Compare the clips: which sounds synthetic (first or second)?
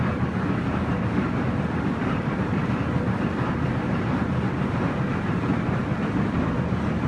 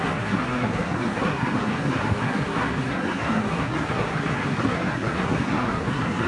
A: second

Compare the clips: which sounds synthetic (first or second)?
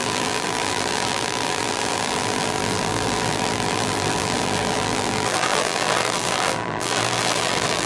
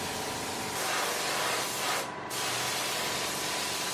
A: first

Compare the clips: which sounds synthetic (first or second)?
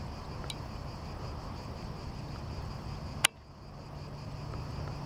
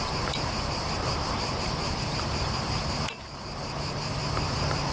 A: second